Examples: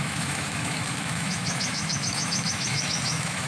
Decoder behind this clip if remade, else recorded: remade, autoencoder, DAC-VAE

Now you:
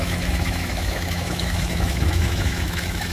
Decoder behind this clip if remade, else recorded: remade, autoencoder, DAC-VAE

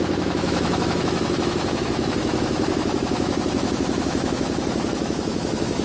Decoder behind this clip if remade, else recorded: remade, autoencoder, DAC-VAE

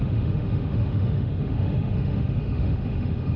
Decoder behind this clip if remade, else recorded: remade, autoencoder, DAC-VAE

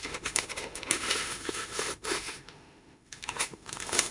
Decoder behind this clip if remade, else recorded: remade, autoencoder, DAC-VAE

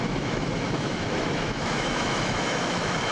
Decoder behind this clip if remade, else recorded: remade, autoencoder, DAC-VAE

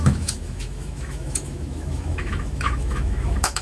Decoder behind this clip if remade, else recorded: remade, autoencoder, DAC-VAE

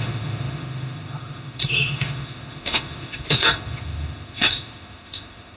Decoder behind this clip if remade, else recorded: remade, autoencoder, DAC-VAE